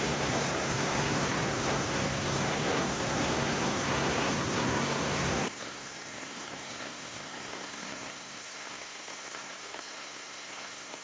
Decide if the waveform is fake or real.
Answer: fake